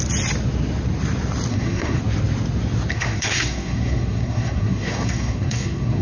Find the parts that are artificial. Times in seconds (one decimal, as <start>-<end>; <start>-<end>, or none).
1.5-2.0; 2.9-6.0